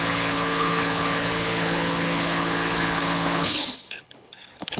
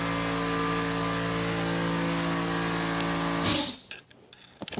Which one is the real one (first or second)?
second